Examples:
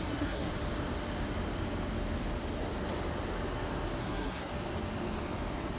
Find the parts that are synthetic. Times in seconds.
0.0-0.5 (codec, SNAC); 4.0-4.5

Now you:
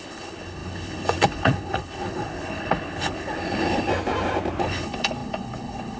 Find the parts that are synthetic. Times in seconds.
0.0-3.9 (codec, HILCodec); 4.6-6.0

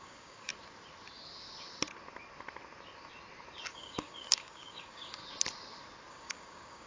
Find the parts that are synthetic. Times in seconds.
0.0-0.5 (codec, DAC); 3.7-5.2; 6.1-6.9

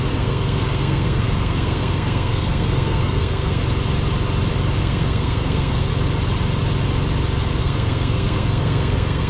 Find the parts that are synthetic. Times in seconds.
0.0-3.6 (codec, SNAC); 4.8-5.9; 7.6-9.3